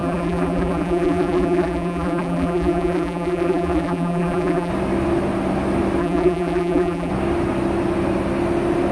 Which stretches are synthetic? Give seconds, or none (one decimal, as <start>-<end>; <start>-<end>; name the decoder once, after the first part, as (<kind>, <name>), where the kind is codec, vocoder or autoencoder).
0.0-4.7 (vocoder, BigVGAN v2); 6.0-7.1